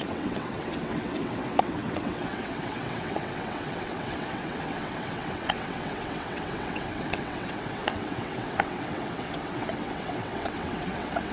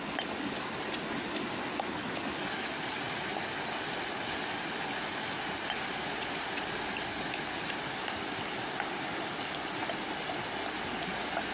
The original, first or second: second